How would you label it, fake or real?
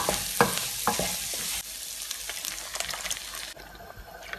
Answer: real